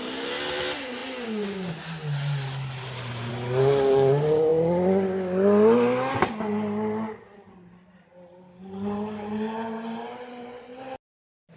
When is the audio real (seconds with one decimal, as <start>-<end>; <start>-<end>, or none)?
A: 0.0-11.6